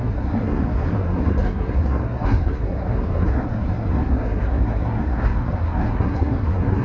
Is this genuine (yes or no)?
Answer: no